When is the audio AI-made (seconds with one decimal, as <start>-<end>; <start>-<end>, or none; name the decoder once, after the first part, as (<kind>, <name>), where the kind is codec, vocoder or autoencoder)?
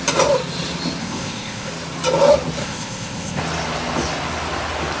1.0-1.7 (codec, ZipCodec); 2.6-3.4